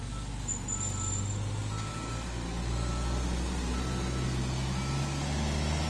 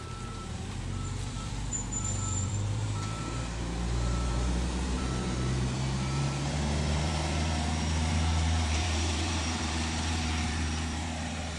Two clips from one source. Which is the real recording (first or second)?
first